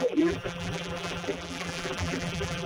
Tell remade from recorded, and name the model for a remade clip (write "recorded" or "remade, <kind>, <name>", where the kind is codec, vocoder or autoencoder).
remade, vocoder, BigVGAN v2